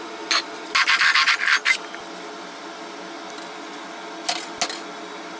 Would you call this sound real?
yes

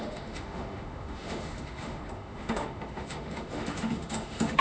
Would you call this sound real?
no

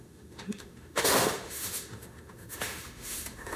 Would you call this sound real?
no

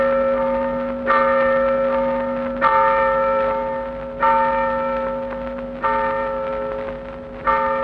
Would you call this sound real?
yes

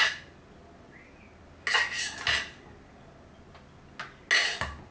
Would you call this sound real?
yes